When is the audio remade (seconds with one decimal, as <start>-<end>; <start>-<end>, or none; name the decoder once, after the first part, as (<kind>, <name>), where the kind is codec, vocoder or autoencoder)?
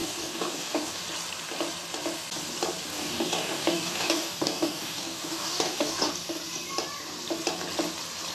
0.0-1.0 (codec, DAC); 2.9-6.1